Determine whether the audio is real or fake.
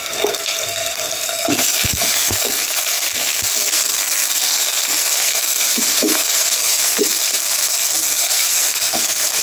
fake